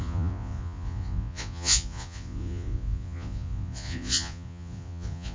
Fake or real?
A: fake